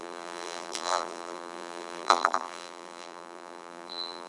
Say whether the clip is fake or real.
fake